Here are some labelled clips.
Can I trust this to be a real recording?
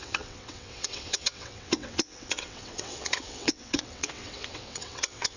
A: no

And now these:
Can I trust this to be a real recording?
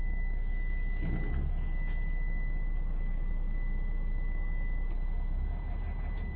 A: yes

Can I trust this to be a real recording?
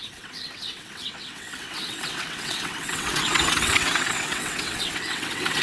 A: no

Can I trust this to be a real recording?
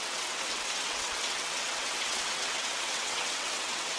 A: no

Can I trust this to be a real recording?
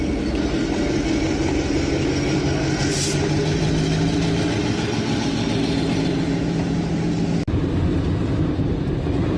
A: yes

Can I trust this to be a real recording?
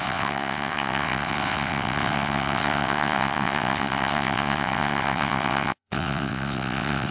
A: no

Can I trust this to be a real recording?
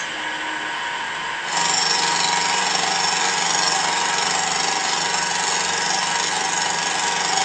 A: yes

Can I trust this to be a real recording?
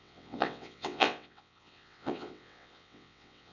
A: no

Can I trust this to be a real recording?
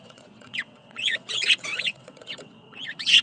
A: no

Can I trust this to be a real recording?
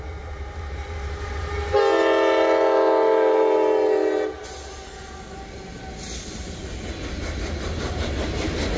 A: yes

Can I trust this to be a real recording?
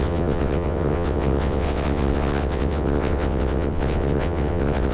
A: no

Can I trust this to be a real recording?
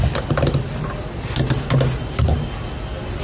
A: yes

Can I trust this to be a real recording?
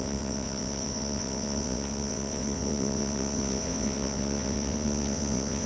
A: no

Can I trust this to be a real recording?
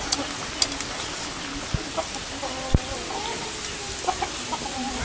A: yes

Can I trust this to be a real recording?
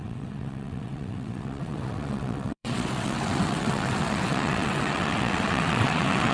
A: no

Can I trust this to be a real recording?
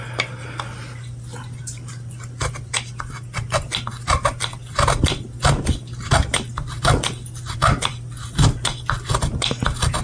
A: yes